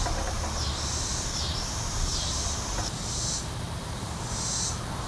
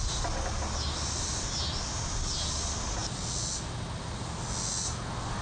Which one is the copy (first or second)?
first